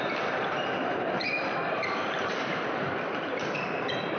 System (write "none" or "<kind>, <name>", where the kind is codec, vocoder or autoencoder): vocoder, BigVGAN v2